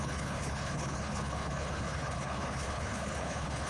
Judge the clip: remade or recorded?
remade